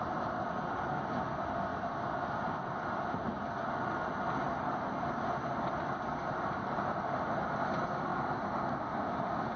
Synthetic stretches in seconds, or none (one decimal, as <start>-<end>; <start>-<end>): none